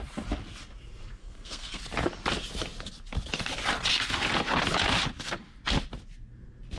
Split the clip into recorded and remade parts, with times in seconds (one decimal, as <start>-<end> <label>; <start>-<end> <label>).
0.0-1.2 recorded; 1.2-1.8 remade; 1.8-6.8 recorded